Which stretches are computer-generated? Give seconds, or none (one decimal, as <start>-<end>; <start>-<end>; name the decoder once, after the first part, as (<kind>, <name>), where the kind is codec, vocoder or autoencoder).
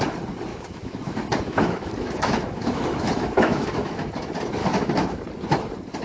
0.5-4.1 (autoencoder, DAC-VAE); 4.6-5.2